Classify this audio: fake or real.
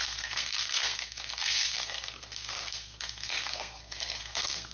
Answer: fake